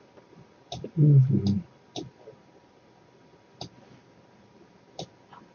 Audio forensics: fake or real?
real